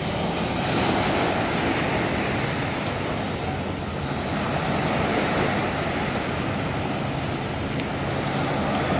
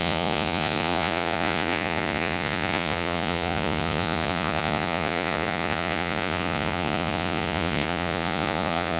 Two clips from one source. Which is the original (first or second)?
first